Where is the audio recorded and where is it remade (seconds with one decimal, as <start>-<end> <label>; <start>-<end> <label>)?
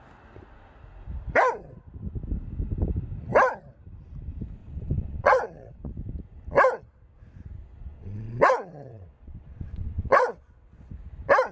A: 0.0-4.6 recorded; 4.6-5.9 remade; 5.9-7.9 recorded; 7.9-10.9 remade; 10.9-11.5 recorded